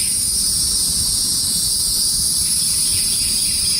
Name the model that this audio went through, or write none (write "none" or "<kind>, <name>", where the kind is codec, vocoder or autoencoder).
none